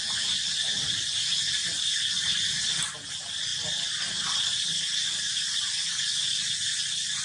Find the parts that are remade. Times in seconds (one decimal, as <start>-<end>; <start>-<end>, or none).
none